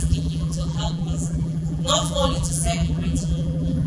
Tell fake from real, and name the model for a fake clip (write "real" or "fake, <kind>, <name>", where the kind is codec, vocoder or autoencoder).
fake, vocoder, BigVGAN v2